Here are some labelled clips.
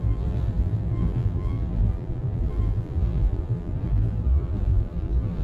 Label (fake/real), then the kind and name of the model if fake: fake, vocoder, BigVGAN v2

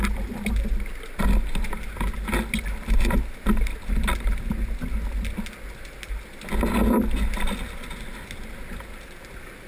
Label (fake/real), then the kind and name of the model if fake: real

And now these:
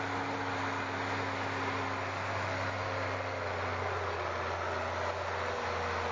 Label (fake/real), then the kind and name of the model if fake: real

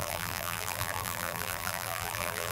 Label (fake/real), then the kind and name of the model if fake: fake, vocoder, BigVGAN v2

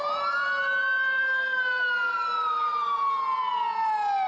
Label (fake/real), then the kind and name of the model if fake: real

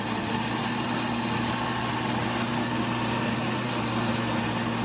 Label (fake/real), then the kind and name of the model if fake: real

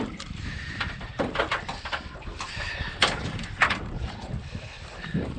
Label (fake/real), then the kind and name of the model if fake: fake, vocoder, BigVGAN v2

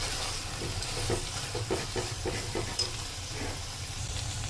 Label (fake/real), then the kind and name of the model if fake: fake, vocoder, BigVGAN v2